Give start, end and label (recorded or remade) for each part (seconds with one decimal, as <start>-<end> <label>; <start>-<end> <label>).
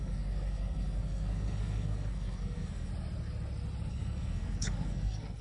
0.0-2.9 remade; 2.9-3.9 recorded; 3.9-5.4 remade